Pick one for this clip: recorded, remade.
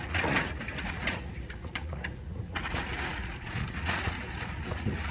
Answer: remade